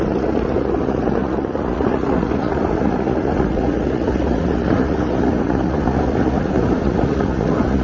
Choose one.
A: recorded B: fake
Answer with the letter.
B